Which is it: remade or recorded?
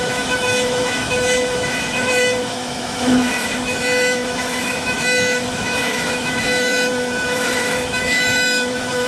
remade